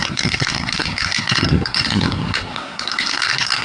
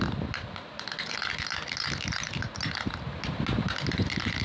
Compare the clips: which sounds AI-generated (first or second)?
first